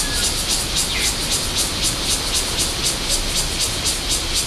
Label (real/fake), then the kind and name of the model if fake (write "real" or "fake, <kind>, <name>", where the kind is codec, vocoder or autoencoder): real